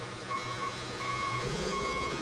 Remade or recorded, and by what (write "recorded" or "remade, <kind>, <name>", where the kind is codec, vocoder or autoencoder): remade, vocoder, Vocos